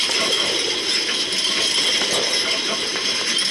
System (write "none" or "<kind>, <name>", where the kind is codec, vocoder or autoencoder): vocoder, BigVGAN v2